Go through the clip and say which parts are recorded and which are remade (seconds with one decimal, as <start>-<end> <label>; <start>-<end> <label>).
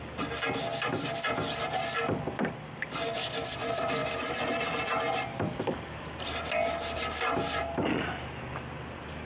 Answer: 0.0-9.3 recorded